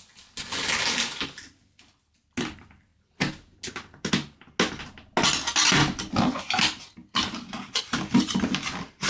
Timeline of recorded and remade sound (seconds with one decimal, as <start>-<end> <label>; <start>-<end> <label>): 0.0-7.0 recorded; 7.0-8.0 remade; 8.0-9.1 recorded